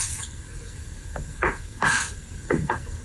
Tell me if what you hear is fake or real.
fake